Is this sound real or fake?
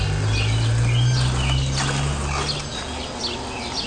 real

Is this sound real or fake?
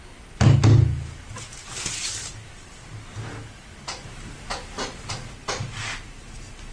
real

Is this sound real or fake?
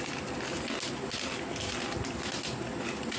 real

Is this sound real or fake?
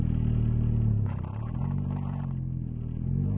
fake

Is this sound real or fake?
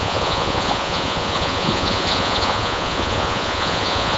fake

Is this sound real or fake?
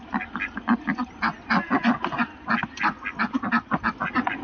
real